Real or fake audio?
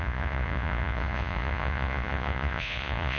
fake